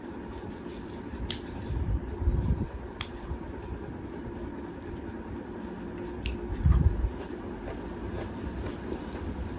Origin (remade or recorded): remade